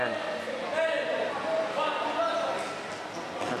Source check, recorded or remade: recorded